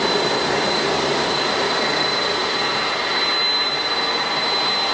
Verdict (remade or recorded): recorded